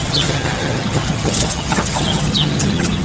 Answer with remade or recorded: remade